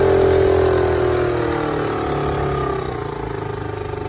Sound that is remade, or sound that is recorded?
recorded